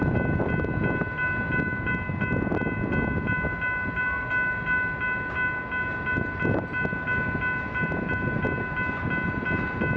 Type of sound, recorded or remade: recorded